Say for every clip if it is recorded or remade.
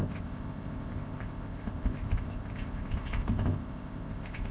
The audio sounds remade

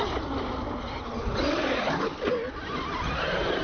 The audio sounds recorded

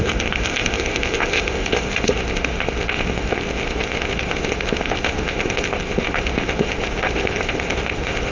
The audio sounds remade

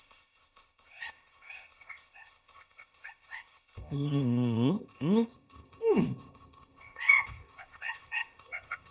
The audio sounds remade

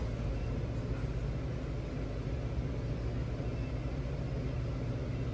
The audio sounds recorded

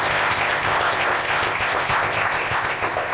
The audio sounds remade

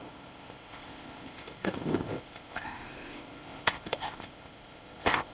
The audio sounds remade